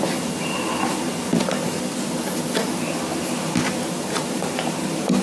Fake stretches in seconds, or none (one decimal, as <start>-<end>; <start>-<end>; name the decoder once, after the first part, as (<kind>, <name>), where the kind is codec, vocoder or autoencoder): none